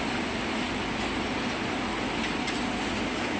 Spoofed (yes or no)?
no